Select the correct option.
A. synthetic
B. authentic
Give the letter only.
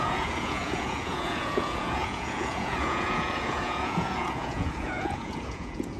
A